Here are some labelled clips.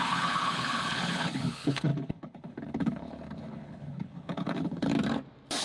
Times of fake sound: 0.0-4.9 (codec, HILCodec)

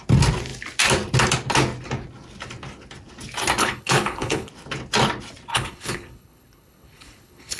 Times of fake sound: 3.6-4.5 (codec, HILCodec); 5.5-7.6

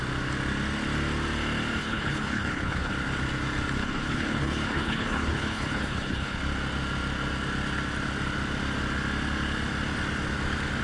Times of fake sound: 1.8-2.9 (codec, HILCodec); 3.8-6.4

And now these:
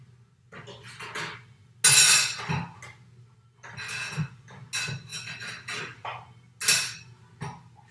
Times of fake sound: none

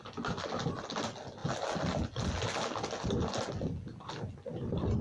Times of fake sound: none

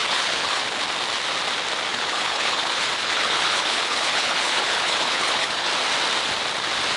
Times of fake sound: 0.0-0.8 (codec, HILCodec); 1.9-5.7

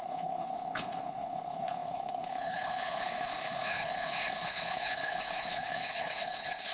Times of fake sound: 0.0-6.7 (codec, HILCodec)